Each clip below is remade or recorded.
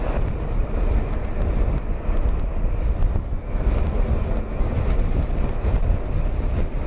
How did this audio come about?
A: recorded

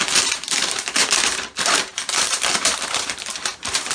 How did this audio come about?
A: remade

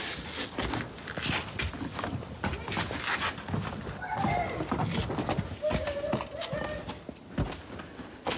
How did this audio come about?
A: recorded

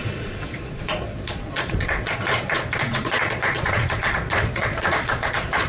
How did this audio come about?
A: remade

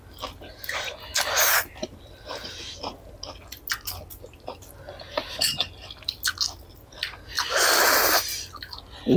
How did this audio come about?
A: recorded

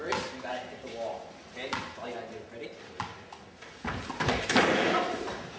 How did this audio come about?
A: recorded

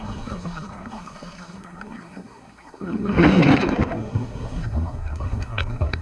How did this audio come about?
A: remade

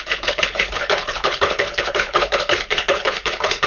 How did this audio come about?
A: remade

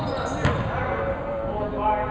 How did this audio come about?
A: recorded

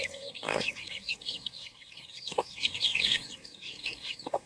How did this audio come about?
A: remade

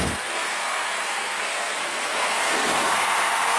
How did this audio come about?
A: remade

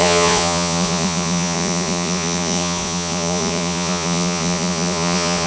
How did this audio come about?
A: remade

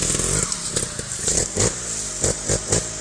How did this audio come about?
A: recorded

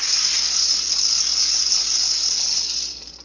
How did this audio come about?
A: recorded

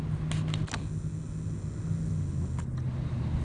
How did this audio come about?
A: recorded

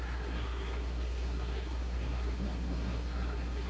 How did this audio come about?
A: remade